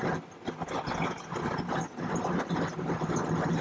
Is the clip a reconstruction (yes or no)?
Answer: no